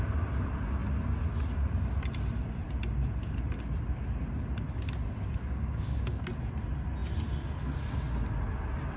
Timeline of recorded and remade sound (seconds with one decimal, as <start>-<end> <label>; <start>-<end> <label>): 0.0-5.4 recorded; 5.4-6.2 remade; 6.2-9.0 recorded